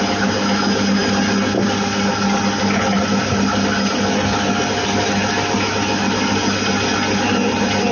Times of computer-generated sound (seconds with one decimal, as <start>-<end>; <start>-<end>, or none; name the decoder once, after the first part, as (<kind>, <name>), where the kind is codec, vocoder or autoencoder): none